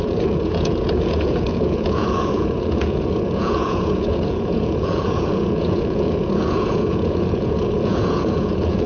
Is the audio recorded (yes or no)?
no